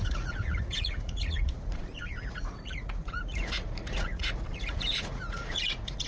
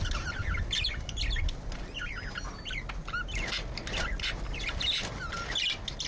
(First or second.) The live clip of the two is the second